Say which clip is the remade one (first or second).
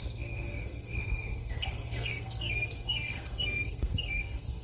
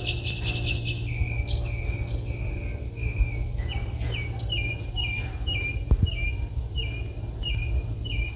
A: first